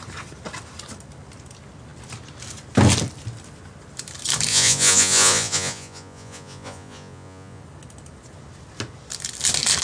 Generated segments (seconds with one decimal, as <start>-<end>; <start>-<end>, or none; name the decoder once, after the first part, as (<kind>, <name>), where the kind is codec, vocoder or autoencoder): 4.5-7.6 (vocoder, Vocos)